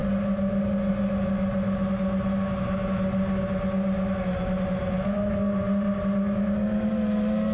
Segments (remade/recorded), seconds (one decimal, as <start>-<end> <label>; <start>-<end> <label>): 0.0-7.5 recorded